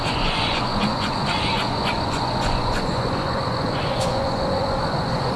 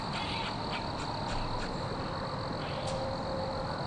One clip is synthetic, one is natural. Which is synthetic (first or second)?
first